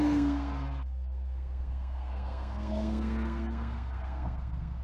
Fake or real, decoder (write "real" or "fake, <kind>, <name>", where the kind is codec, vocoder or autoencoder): fake, codec, SNAC